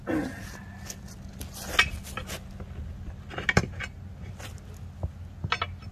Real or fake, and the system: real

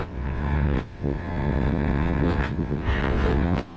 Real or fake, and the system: fake, vocoder, WaveNeXt